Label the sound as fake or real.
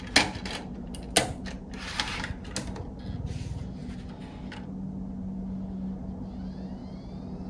real